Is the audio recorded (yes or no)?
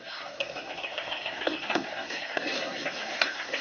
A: no